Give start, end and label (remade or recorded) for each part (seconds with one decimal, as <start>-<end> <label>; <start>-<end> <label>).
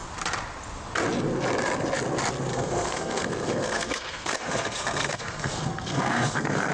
0.0-2.5 recorded; 2.5-6.7 remade